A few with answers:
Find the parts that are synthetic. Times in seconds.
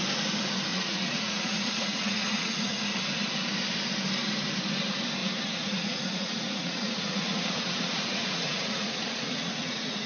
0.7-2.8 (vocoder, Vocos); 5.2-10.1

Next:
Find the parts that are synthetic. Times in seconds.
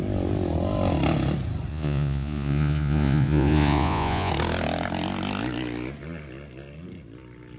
1.7-4.3 (vocoder, Vocos)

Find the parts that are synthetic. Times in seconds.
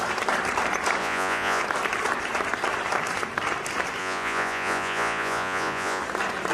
1.0-1.6 (vocoder, Vocos); 4.0-6.0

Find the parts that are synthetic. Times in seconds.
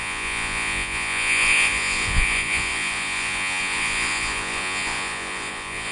0.0-5.9 (vocoder, Vocos)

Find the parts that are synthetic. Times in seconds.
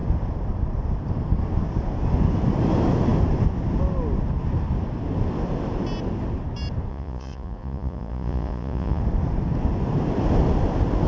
6.9-9.0 (vocoder, Vocos)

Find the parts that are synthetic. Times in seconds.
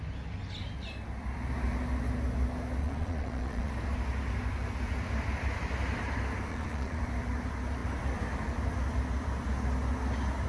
2.8-3.7 (vocoder, Vocos); 6.5-7.0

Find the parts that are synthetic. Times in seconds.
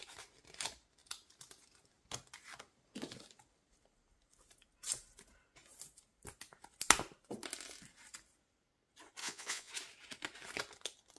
9.2-9.7 (vocoder, Vocos)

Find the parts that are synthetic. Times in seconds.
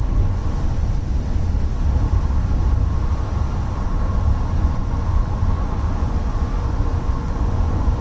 0.0-0.4 (vocoder, Vocos); 4.5-8.0